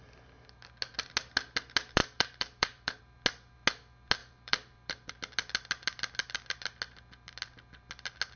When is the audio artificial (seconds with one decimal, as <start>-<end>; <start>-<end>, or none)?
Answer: 2.0-3.0; 4.2-5.1